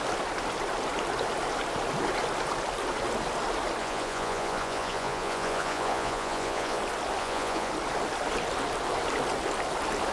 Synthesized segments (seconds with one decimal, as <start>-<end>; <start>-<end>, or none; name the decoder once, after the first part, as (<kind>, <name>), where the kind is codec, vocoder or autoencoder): 3.8-6.8 (vocoder, Vocos); 7.2-7.7